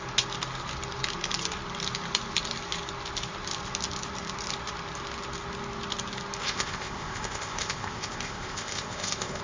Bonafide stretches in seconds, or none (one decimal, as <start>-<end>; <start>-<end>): 0.0-6.4